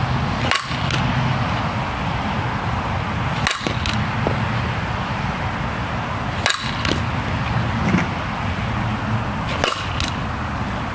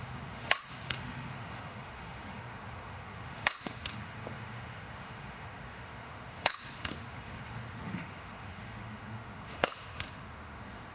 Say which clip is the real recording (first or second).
first